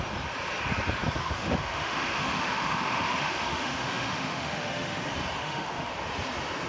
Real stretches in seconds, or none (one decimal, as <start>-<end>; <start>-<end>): 0.0-1.2; 5.0-5.4; 5.9-6.7